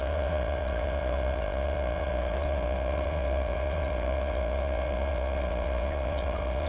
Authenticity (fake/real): fake